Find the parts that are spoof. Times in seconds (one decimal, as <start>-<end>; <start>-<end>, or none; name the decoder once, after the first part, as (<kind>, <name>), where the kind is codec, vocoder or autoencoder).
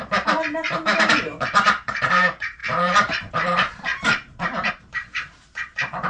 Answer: 0.0-6.1 (vocoder, BigVGAN v2)